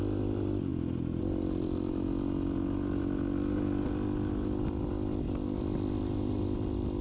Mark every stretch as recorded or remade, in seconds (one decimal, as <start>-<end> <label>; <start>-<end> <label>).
0.0-7.0 recorded